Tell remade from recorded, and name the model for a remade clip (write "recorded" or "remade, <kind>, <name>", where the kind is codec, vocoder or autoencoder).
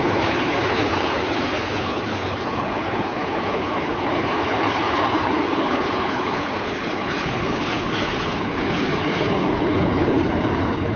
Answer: remade, codec, HILCodec